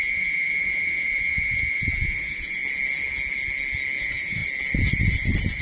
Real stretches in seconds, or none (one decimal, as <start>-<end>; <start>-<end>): 2.6-4.0; 4.4-5.6